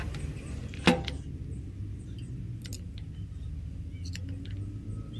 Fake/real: real